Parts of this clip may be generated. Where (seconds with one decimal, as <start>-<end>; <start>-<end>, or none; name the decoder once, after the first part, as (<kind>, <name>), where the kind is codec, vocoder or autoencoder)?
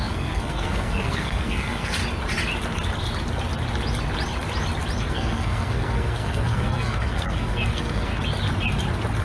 0.0-2.0 (codec, SNAC); 5.1-8.1